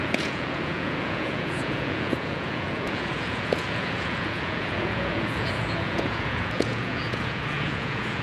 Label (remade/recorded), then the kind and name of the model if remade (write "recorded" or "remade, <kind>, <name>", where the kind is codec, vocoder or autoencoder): remade, vocoder, Vocos